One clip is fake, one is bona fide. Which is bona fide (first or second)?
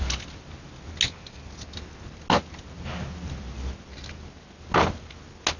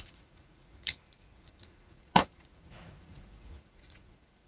first